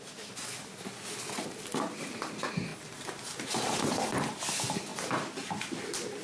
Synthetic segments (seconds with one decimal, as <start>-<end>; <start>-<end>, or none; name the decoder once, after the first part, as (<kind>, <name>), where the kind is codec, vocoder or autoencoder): 2.7-4.5 (vocoder, BigVGAN v2); 4.9-5.8